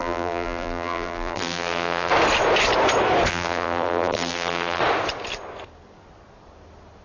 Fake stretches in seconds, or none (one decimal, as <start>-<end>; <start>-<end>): 0.0-2.1; 3.3-4.8